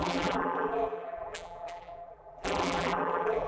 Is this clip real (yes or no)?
no